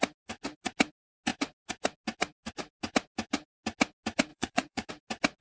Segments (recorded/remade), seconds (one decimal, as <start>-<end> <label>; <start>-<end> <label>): 0.0-4.3 recorded; 4.3-4.9 remade; 4.9-5.4 recorded

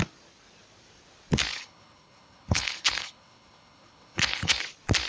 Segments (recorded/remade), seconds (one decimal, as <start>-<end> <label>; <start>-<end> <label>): 0.0-1.5 recorded; 1.5-4.6 remade; 4.6-5.1 recorded